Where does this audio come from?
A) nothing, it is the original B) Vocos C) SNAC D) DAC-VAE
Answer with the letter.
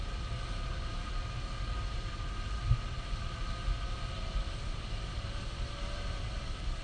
A